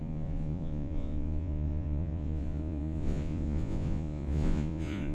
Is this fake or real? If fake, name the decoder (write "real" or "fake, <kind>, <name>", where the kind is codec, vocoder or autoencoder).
fake, vocoder, Vocos